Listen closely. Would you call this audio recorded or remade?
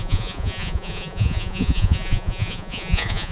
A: remade